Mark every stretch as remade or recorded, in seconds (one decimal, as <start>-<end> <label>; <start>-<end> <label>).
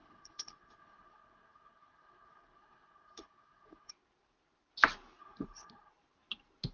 0.0-3.9 remade; 3.9-5.2 recorded; 5.2-5.9 remade; 5.9-6.7 recorded